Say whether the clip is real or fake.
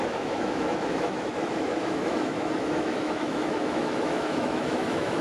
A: fake